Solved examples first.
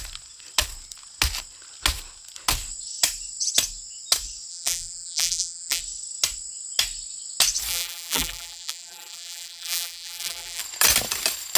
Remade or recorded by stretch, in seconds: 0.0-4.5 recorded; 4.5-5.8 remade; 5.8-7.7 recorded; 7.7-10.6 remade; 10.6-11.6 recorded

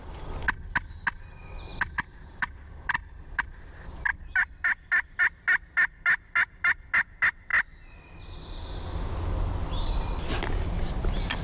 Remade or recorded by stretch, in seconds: 0.0-1.7 recorded; 1.7-5.2 remade; 5.2-11.4 recorded

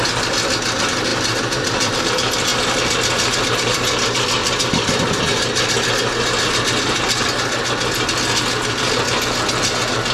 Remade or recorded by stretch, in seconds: 0.0-1.1 recorded; 1.1-2.0 remade; 2.0-4.4 recorded; 4.4-5.0 remade; 5.0-10.1 recorded

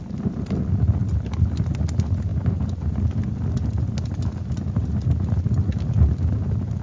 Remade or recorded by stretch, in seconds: 0.0-2.3 remade; 2.3-6.8 recorded

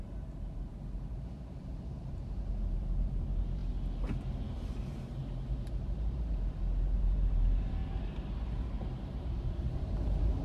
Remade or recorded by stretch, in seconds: 0.0-3.6 remade; 3.6-4.4 recorded; 4.4-5.2 remade; 5.2-5.8 recorded; 5.8-7.8 remade; 7.8-8.8 recorded; 8.8-10.4 remade

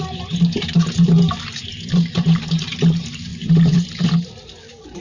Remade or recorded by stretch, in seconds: 0.0-5.0 remade

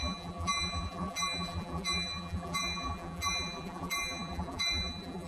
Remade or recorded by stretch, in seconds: 0.0-5.3 remade

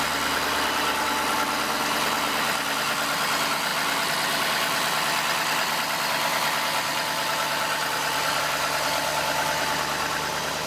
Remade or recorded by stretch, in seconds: 0.0-10.7 recorded